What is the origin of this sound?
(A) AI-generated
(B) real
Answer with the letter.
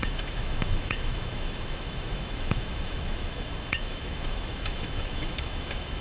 A